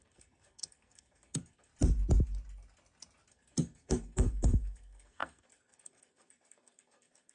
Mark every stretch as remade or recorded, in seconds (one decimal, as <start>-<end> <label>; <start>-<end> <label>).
0.0-1.7 remade; 1.7-3.3 recorded; 3.3-7.3 remade